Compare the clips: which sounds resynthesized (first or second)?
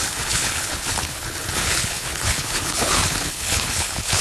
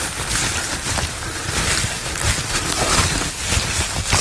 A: first